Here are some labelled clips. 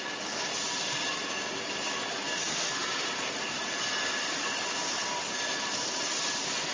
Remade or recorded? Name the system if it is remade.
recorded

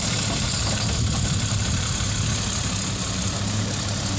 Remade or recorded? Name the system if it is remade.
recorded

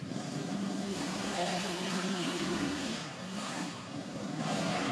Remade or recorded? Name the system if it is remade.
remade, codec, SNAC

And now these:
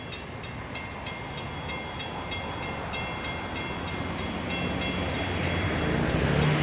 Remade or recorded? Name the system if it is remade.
recorded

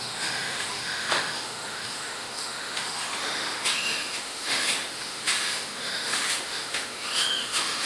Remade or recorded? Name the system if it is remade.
remade, autoencoder, DAC-VAE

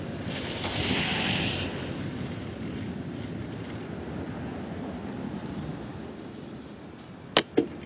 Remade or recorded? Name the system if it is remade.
recorded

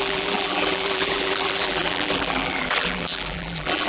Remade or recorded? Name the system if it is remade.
remade, vocoder, BigVGAN v2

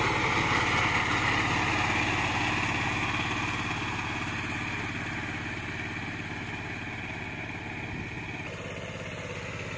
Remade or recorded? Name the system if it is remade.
recorded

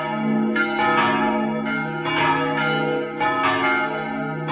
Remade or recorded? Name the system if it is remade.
recorded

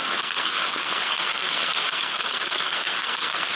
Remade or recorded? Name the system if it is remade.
remade, codec, SNAC